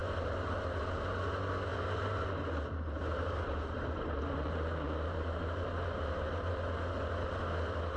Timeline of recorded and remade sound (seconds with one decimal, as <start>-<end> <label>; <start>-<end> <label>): 0.0-0.6 remade; 0.6-1.7 recorded; 1.7-6.5 remade; 6.5-8.0 recorded